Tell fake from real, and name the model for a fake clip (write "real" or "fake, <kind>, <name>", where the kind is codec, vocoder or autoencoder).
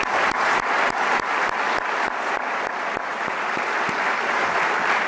real